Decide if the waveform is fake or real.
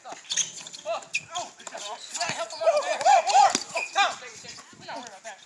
real